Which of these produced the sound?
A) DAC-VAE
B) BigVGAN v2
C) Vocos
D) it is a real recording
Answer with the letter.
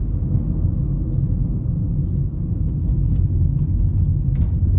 D